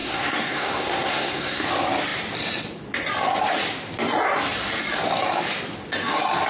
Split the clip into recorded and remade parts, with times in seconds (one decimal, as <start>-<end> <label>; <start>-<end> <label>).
0.0-1.7 remade; 1.7-6.5 recorded